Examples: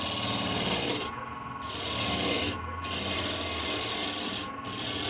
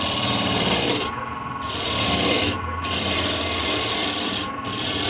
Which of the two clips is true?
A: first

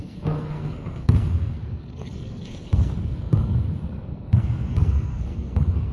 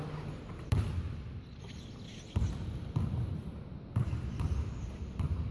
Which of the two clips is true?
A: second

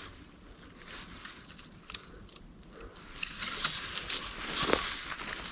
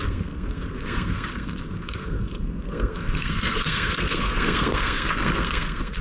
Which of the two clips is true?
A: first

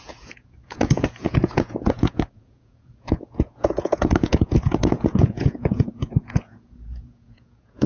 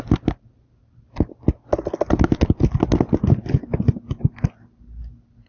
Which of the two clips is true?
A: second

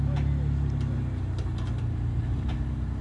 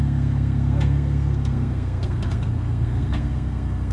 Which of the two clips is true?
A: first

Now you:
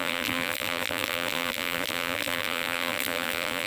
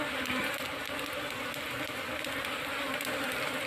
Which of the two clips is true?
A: second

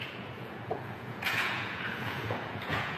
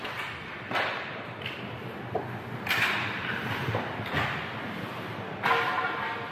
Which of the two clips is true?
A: second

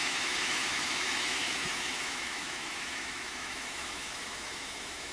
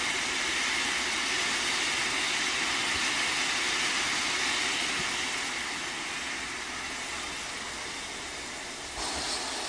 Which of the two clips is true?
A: second